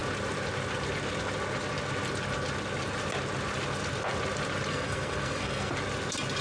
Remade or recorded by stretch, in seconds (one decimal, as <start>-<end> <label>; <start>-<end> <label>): 0.0-4.7 recorded; 4.7-5.7 remade; 5.7-6.4 recorded